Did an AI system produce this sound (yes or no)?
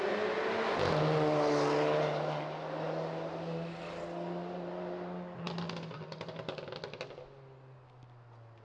no